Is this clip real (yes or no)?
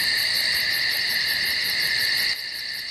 yes